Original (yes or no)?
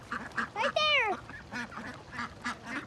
yes